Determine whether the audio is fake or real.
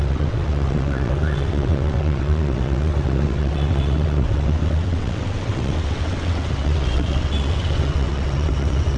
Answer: fake